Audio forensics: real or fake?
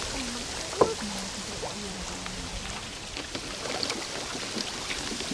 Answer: real